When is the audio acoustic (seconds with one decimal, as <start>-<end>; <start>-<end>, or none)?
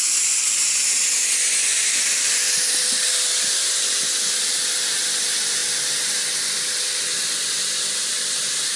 0.0-8.8